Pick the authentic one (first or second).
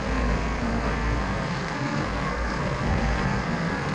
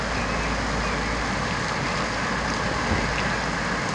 second